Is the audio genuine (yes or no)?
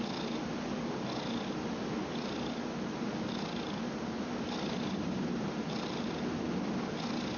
yes